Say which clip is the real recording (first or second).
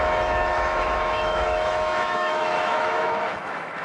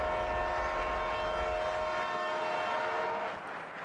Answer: second